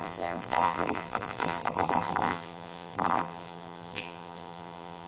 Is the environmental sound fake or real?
fake